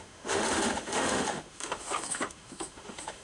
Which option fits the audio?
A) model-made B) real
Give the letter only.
A